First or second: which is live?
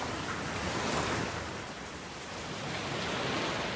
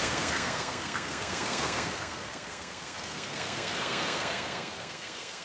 first